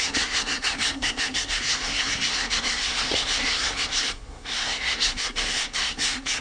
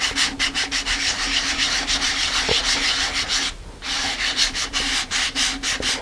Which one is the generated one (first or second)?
first